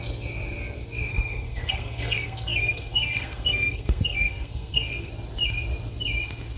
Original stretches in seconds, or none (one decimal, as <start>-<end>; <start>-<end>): 0.0-1.1; 5.1-6.6